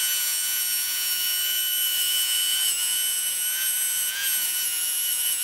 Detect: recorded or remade remade